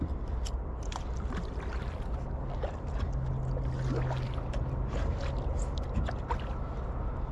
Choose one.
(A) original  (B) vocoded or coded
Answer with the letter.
A